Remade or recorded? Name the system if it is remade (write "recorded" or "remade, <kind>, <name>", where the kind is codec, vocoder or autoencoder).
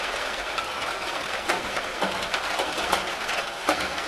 remade, codec, SNAC